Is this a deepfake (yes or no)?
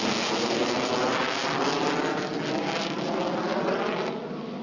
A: no